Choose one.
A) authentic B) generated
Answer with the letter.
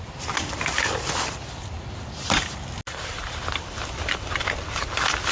A